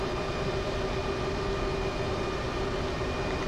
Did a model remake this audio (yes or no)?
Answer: no